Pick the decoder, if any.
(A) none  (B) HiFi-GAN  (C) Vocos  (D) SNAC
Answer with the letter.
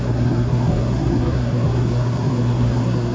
D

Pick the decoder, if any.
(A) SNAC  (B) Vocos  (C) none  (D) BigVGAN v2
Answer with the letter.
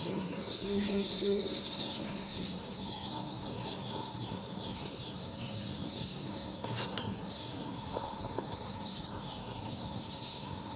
A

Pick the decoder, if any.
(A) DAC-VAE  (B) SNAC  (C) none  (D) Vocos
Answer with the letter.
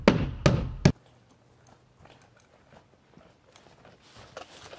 C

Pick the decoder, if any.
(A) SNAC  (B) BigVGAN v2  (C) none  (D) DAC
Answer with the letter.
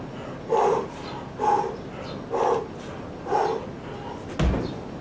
C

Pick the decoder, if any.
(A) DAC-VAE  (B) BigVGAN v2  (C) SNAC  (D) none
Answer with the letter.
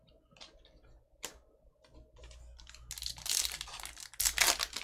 D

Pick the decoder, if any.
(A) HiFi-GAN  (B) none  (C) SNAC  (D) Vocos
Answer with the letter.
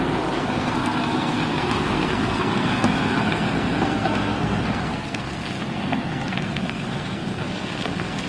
C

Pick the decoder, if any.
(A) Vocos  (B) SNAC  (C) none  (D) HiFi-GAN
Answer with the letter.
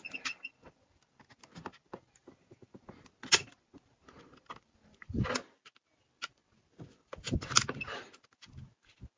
C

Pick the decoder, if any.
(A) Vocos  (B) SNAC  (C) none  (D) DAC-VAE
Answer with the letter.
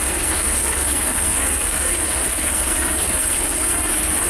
B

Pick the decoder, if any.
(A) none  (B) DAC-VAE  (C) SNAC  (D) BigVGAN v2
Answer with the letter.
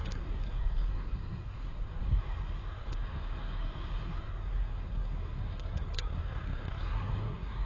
C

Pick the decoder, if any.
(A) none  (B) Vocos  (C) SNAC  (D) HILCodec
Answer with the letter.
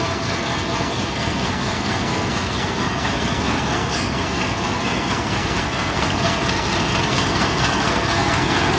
C